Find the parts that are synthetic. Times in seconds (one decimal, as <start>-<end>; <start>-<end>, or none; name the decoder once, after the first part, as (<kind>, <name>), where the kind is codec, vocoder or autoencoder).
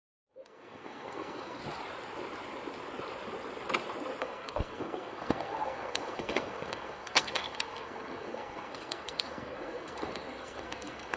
0.0-1.6 (codec, SNAC); 4.2-11.2